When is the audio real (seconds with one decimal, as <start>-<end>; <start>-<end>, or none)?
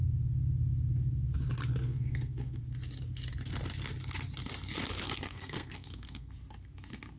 0.0-1.8; 2.6-5.3; 6.3-7.2